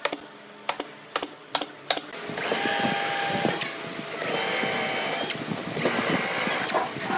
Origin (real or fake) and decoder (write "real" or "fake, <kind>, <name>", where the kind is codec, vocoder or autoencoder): real